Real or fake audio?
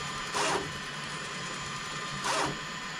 fake